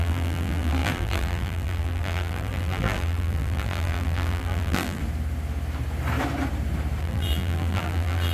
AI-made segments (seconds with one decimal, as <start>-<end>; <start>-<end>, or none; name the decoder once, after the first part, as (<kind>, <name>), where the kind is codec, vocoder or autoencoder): 0.0-5.0 (vocoder, BigVGAN v2); 7.0-8.3